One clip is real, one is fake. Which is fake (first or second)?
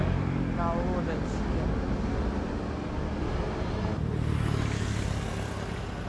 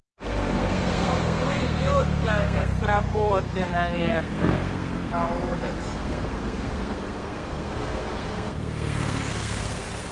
second